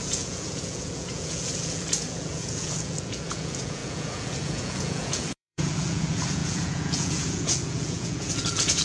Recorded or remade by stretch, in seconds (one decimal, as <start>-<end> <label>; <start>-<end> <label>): 0.0-8.8 remade